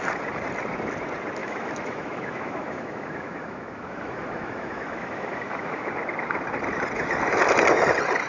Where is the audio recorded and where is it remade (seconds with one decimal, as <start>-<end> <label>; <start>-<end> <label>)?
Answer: 0.0-1.4 recorded; 1.4-5.9 remade; 5.9-8.3 recorded